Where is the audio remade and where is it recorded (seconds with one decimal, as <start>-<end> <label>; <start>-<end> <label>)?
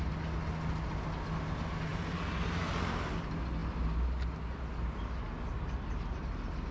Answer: 0.0-6.7 recorded